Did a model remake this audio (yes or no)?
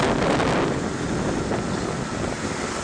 no